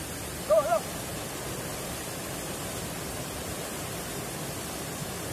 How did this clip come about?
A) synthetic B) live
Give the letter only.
B